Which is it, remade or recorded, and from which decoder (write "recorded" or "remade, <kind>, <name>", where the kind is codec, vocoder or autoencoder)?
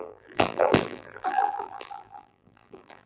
remade, vocoder, BigVGAN v2